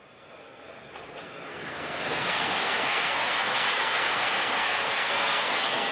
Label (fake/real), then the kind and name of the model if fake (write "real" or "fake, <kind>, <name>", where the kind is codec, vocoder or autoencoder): fake, codec, SNAC